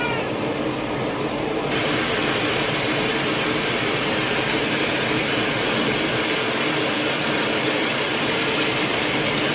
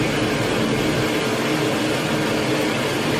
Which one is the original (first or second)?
second